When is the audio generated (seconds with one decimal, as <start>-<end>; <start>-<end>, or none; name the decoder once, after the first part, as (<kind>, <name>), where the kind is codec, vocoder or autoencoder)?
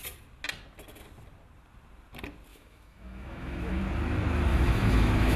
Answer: 2.5-3.8 (autoencoder, DAC-VAE); 4.5-5.4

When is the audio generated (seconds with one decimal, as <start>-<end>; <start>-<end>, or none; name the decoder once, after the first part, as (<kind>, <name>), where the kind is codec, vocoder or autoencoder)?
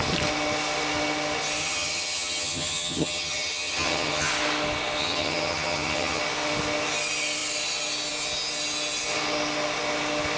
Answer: 1.6-4.3 (vocoder, HiFi-GAN); 5.0-6.2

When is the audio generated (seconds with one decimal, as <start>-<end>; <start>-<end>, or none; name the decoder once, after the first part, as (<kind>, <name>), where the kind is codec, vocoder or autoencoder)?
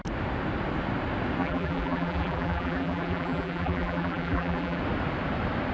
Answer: 1.4-4.8 (vocoder, BigVGAN v2)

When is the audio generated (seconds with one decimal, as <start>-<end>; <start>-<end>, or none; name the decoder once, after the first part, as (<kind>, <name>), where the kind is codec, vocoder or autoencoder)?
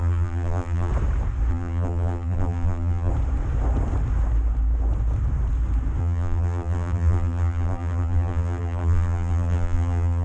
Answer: 0.0-0.9 (vocoder, BigVGAN v2); 1.5-3.1; 6.0-10.2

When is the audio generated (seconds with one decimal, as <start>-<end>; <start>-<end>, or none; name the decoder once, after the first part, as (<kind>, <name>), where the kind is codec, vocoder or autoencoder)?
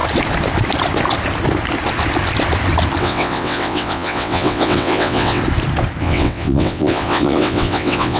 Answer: 3.0-5.4 (vocoder, WaveNeXt); 6.0-8.2